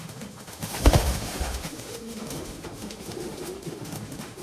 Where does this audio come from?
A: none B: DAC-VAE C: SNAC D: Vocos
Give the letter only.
B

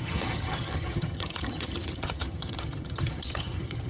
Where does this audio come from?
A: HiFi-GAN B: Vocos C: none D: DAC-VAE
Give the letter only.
A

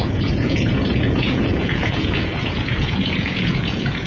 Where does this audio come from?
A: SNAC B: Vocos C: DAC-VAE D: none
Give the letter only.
B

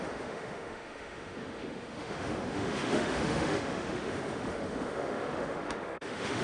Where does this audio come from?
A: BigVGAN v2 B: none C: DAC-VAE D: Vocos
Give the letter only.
C